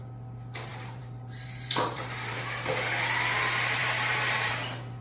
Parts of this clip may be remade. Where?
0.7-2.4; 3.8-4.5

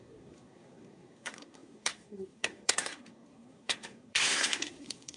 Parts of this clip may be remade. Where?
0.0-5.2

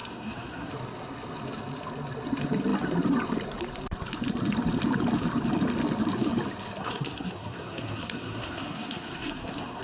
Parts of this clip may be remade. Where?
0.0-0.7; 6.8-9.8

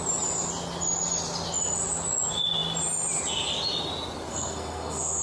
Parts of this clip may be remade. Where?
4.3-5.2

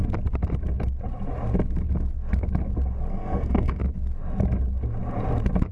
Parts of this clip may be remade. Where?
3.1-3.8

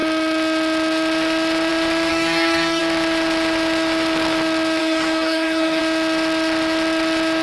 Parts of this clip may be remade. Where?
2.1-2.8; 4.8-5.8

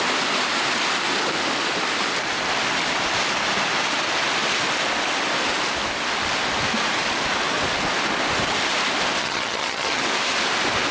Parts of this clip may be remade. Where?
9.2-10.0